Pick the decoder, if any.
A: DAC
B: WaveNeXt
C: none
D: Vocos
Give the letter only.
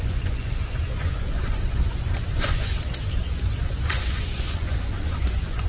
D